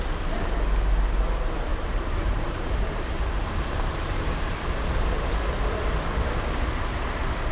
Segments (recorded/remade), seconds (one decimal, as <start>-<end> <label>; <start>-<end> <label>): 0.0-1.7 recorded; 1.7-4.2 remade; 4.2-7.5 recorded